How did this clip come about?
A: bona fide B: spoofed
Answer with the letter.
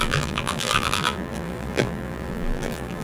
B